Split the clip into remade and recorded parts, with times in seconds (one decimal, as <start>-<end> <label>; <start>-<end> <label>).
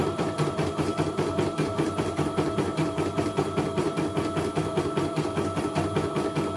0.0-4.0 remade; 4.0-6.6 recorded